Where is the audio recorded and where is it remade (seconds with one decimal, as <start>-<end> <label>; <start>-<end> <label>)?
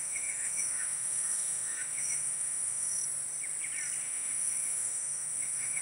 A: 0.0-3.0 remade; 3.0-4.0 recorded; 4.0-5.8 remade